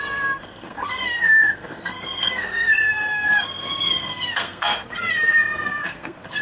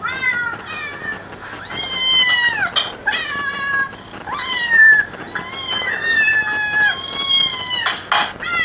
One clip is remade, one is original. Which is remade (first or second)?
first